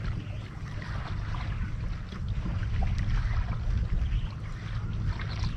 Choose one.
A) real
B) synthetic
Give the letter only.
A